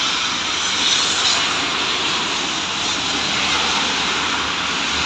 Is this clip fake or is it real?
real